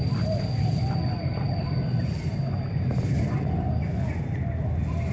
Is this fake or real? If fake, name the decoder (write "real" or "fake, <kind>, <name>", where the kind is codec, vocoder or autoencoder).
real